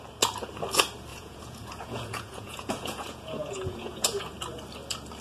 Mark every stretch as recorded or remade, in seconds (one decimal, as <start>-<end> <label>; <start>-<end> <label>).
0.0-1.1 recorded; 1.1-4.2 remade; 4.2-5.2 recorded